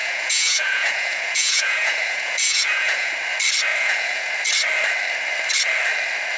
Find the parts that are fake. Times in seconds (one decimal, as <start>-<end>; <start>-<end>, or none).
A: 0.0-3.1; 3.7-4.3